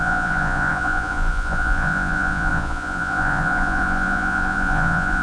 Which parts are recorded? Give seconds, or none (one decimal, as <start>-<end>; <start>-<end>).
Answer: none